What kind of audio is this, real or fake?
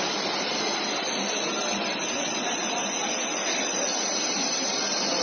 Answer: fake